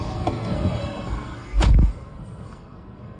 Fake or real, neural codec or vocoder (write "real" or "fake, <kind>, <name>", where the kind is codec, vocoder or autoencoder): fake, codec, SNAC